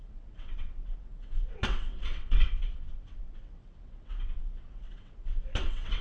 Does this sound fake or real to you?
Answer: fake